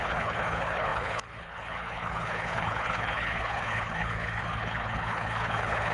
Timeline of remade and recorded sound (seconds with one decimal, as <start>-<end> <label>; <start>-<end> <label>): 0.0-5.9 remade